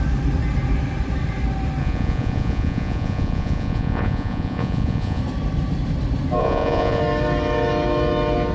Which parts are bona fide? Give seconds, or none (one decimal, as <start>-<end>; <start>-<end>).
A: 0.0-1.8; 5.2-6.4; 7.0-8.5